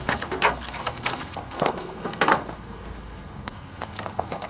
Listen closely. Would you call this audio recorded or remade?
remade